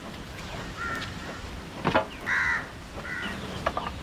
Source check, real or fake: real